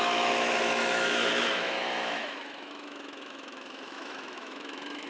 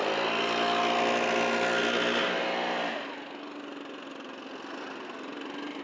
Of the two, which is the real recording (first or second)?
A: second